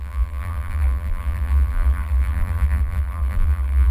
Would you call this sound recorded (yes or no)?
no